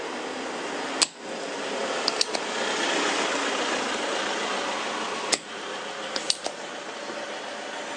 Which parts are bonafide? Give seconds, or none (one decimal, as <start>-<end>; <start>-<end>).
0.0-8.0